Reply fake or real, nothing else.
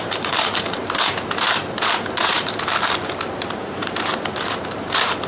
fake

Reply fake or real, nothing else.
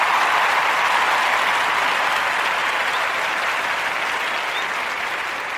real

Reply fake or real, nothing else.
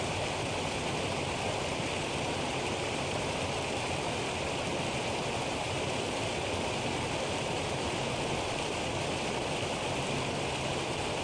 real